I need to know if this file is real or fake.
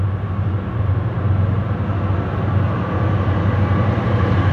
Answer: real